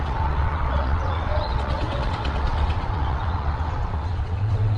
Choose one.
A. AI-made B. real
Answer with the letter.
A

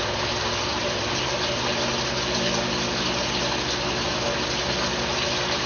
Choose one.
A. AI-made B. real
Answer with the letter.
B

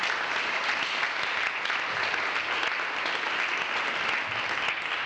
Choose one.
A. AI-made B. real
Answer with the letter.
B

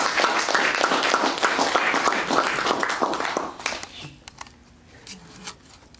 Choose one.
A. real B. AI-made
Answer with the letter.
A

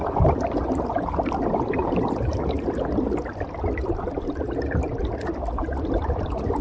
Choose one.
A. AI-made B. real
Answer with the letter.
B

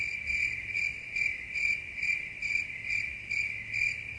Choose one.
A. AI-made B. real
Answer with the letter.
B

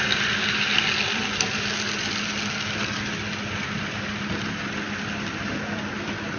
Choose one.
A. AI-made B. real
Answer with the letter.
B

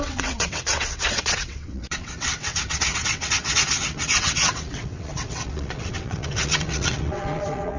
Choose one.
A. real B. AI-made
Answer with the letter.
B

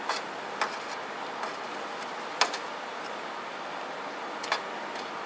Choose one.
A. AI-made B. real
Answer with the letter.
B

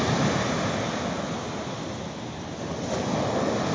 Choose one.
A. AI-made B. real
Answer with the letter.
B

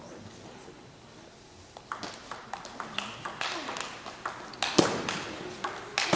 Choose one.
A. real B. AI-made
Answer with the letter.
A